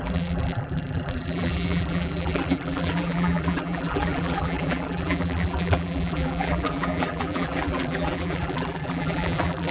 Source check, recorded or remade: remade